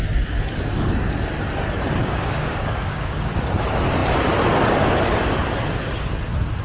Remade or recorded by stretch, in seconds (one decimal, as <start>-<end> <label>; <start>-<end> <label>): 0.0-2.0 recorded; 2.0-3.3 remade; 3.3-6.6 recorded